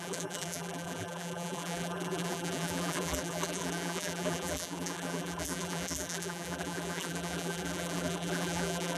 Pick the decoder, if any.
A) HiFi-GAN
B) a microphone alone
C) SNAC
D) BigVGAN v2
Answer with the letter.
D